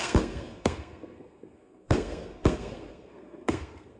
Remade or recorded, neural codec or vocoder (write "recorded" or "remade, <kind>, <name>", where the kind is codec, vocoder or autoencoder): remade, codec, SNAC